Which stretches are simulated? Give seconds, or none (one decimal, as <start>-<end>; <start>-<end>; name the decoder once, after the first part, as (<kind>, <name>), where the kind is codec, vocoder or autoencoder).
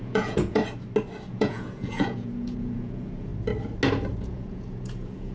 0.0-0.6 (vocoder, Vocos); 1.3-3.3; 4.1-5.3